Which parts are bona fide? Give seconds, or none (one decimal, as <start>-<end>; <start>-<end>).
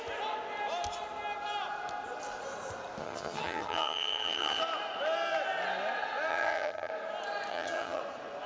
0.0-3.0; 4.6-6.3; 6.9-7.5; 8.0-8.5